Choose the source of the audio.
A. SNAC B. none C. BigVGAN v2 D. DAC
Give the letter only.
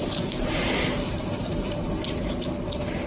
B